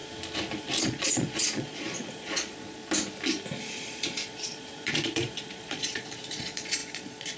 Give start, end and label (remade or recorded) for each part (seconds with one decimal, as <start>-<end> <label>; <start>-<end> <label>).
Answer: 0.0-0.8 recorded; 0.8-2.8 remade; 2.8-3.6 recorded; 3.6-7.4 remade